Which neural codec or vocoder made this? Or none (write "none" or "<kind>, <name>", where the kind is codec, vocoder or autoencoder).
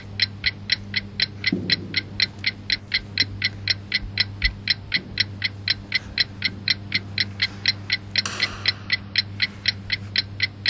none